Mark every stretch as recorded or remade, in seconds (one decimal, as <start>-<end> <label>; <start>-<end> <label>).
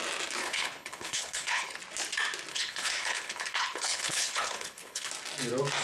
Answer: 0.0-0.4 recorded; 0.4-1.8 remade; 1.8-2.5 recorded; 2.5-5.1 remade; 5.1-5.8 recorded